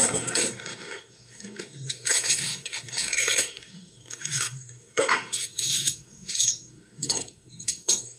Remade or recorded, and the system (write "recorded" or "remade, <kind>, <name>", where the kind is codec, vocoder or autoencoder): remade, codec, SNAC